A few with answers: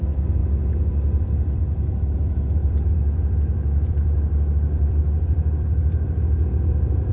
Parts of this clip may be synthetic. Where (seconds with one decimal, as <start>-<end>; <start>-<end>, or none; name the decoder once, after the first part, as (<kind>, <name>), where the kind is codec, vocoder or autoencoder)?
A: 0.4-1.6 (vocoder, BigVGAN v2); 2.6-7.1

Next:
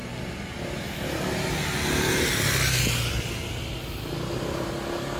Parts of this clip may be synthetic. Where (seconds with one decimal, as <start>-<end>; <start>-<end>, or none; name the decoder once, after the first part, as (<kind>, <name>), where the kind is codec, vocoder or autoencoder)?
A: none

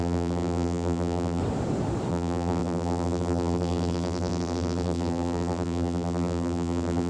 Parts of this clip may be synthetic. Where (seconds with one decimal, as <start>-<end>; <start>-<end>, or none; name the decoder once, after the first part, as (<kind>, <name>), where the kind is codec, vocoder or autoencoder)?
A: 0.0-1.4 (vocoder, BigVGAN v2); 2.1-7.1

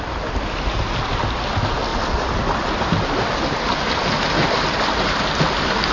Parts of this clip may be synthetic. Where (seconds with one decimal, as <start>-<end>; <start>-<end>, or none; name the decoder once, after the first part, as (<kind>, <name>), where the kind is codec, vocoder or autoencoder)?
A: none

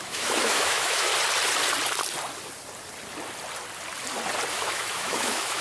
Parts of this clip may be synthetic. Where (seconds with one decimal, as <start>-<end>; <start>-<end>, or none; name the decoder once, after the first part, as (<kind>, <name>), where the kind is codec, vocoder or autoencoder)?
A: 0.0-1.1 (autoencoder, DAC-VAE); 4.5-5.6

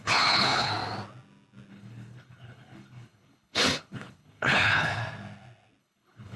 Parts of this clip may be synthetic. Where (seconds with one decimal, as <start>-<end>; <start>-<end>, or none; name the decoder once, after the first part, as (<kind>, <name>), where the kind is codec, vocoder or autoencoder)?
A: 0.0-0.7 (codec, HILCodec); 1.7-5.0; 5.8-6.4

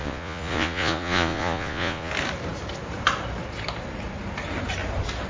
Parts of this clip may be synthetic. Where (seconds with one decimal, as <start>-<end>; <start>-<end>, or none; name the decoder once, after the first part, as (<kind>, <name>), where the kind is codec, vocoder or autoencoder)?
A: 0.0-2.1 (vocoder, Vocos)